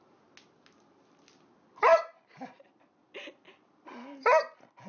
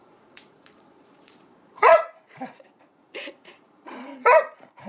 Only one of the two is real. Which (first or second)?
first